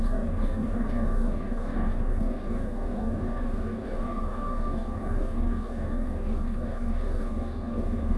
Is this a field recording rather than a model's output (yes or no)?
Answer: no